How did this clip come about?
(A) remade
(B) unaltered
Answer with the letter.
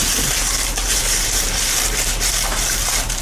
A